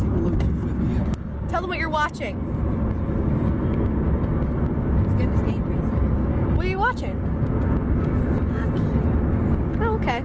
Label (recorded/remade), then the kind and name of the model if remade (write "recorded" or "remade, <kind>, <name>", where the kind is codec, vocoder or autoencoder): recorded